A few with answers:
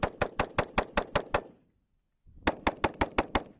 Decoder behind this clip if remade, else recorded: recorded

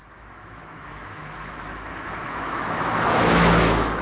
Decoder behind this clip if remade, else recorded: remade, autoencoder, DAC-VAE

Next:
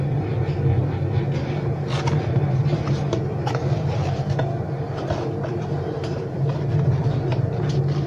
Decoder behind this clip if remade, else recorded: recorded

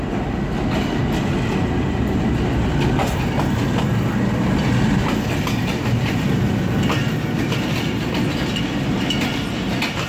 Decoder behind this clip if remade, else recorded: recorded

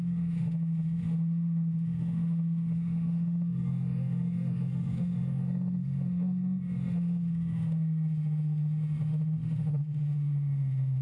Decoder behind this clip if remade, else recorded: remade, autoencoder, DAC-VAE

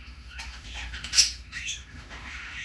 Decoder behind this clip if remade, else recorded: remade, autoencoder, DAC-VAE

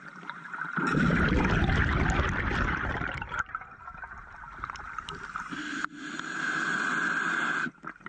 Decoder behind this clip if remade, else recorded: recorded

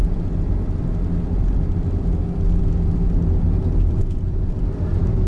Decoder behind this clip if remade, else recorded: recorded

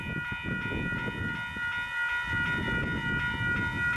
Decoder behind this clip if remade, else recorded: recorded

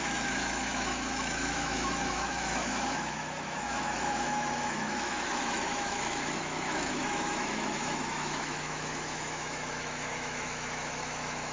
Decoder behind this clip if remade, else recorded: remade, autoencoder, DAC-VAE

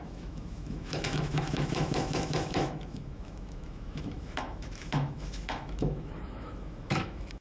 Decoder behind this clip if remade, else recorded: remade, autoencoder, DAC-VAE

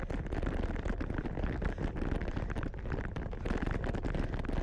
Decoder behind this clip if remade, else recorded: recorded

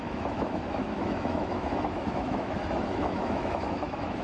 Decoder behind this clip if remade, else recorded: remade, autoencoder, DAC-VAE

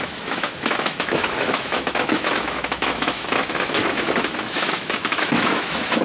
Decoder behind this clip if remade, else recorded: remade, autoencoder, DAC-VAE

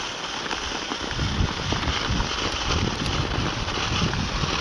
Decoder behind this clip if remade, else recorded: recorded